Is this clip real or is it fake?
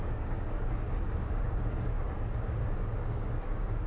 fake